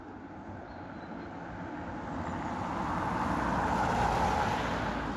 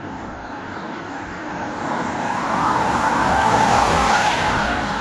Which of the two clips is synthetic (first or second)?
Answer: second